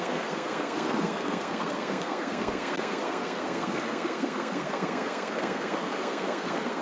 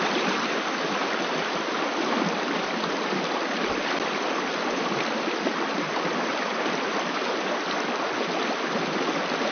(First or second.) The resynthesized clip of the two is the first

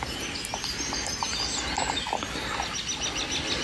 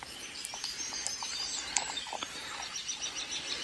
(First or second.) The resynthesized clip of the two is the second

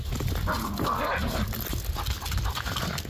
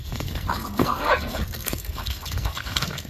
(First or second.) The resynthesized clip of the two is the second